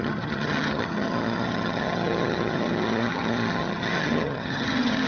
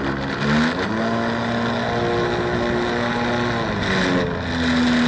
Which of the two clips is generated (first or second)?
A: first